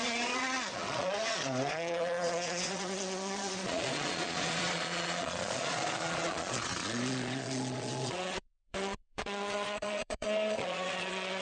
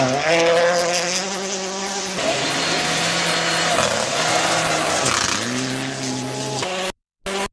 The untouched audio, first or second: second